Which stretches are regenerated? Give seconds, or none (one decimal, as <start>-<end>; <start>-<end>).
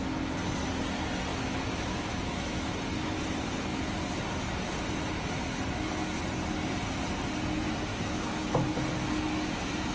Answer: 1.3-2.6; 7.9-8.7